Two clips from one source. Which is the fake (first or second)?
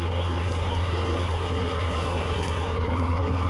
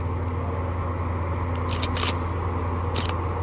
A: first